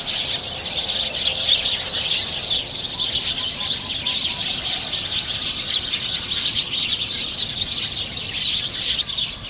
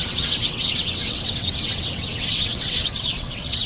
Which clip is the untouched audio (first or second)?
first